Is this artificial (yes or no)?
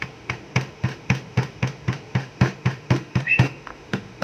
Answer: yes